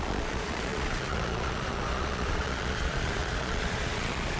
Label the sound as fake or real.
fake